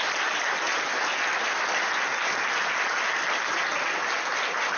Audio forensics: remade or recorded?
recorded